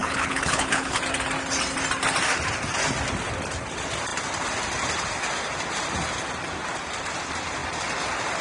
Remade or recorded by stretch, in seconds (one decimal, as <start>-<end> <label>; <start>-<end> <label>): 0.0-1.0 remade; 1.0-8.4 recorded